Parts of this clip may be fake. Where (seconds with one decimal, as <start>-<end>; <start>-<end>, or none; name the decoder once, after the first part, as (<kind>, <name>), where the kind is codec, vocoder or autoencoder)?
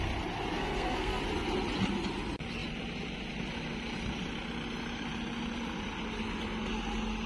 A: 0.5-1.2 (codec, SNAC)